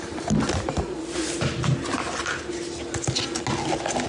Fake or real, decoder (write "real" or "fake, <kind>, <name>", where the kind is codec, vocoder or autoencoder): real